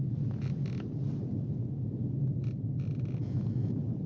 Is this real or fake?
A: real